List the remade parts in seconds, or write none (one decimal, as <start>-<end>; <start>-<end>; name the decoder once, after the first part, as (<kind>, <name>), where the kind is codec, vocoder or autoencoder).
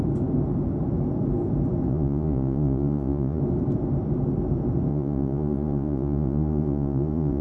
1.9-3.4 (vocoder, Vocos); 4.9-7.4